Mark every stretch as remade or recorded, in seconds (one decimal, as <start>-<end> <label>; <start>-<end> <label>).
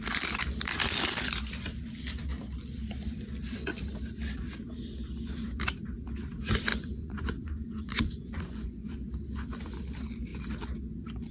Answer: 0.0-6.7 recorded; 6.7-8.9 remade; 8.9-11.3 recorded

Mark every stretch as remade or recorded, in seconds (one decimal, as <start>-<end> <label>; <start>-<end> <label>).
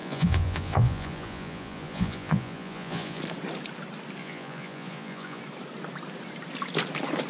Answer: 0.0-3.2 remade; 3.2-4.2 recorded; 4.2-5.4 remade; 5.4-7.3 recorded